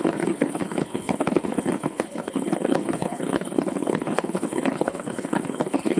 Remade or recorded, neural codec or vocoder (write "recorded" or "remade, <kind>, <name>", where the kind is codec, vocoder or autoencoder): remade, codec, HILCodec